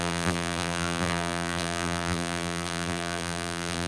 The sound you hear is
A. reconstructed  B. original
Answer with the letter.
A